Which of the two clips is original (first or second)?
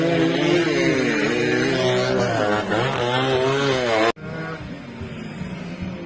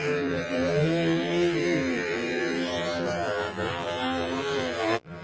first